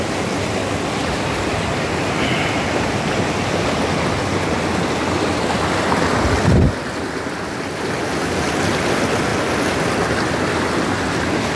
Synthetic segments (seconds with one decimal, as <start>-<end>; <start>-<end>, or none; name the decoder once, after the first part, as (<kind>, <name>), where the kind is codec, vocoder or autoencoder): none